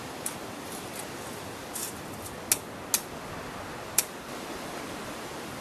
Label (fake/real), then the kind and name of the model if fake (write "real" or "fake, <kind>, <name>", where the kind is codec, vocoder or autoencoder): real